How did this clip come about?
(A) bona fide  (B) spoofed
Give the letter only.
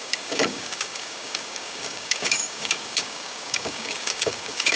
B